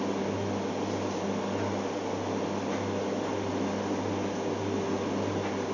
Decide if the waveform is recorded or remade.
recorded